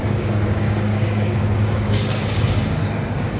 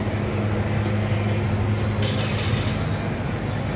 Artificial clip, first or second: first